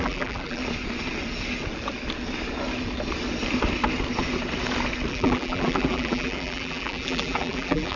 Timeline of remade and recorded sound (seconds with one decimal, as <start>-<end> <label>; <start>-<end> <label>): 0.0-0.6 remade; 0.6-5.1 recorded; 5.1-8.0 remade